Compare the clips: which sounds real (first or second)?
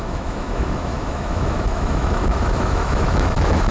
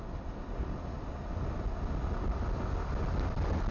second